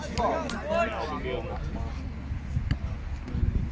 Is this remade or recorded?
recorded